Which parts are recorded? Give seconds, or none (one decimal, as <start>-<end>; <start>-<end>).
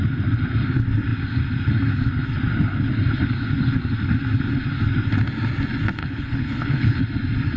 0.0-6.0; 7.0-7.6